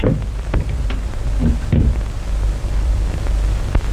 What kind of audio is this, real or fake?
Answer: fake